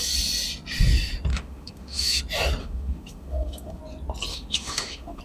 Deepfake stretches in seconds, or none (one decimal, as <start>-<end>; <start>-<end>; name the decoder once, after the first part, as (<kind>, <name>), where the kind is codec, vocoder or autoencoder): 1.3-2.2 (autoencoder, DAC-VAE); 2.6-3.8; 4.3-5.2